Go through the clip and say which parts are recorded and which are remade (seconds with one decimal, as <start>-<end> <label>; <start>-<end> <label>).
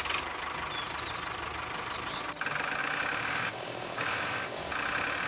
0.0-2.8 recorded; 2.8-4.7 remade; 4.7-5.3 recorded